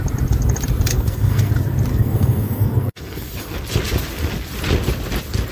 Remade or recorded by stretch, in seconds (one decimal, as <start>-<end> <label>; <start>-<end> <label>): 0.0-0.9 recorded; 0.9-1.5 remade; 1.5-1.9 recorded; 1.9-3.6 remade; 3.6-5.5 recorded